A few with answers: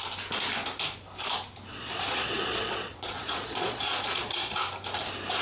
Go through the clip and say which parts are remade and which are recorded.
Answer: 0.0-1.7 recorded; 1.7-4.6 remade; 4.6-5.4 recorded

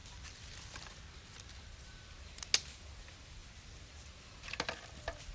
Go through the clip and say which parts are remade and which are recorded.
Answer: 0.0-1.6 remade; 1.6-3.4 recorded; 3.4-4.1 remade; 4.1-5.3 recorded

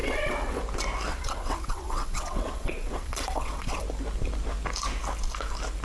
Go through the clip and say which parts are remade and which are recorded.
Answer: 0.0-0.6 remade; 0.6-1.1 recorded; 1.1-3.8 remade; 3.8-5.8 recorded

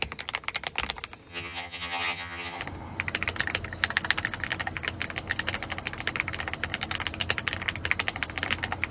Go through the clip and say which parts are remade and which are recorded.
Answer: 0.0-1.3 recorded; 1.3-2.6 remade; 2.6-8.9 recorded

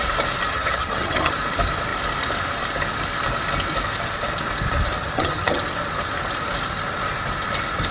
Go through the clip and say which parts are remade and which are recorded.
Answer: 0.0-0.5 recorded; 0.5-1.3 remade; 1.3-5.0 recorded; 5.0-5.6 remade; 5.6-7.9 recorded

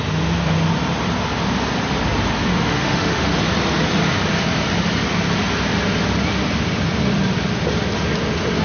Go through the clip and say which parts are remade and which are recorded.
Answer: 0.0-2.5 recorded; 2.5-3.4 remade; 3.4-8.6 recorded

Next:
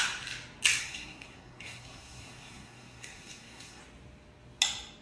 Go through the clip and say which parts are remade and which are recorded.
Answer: 0.0-0.8 recorded; 0.8-3.8 remade; 3.8-5.0 recorded